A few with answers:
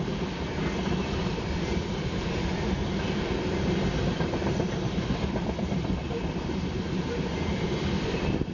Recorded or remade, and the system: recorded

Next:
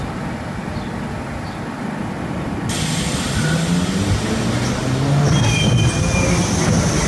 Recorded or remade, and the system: recorded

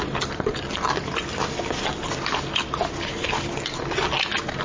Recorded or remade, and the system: recorded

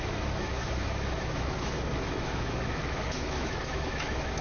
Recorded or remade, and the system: remade, autoencoder, DAC-VAE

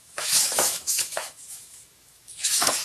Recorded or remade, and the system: remade, autoencoder, DAC-VAE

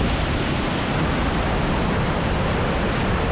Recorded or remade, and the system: recorded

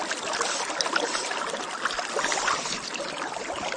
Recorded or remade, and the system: recorded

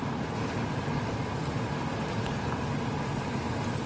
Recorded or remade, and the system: recorded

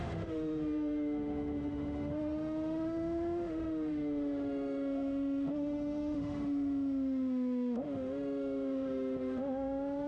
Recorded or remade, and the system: remade, autoencoder, DAC-VAE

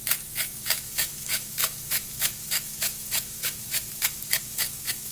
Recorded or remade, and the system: remade, autoencoder, DAC-VAE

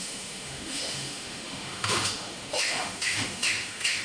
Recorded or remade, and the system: remade, autoencoder, DAC-VAE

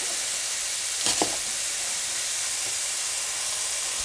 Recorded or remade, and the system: recorded